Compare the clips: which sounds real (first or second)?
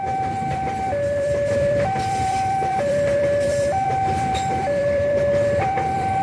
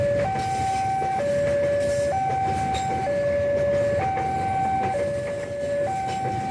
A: second